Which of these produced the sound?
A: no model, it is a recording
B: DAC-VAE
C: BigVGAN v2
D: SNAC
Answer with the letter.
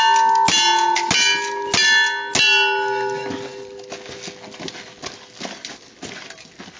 A